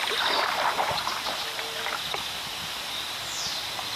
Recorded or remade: recorded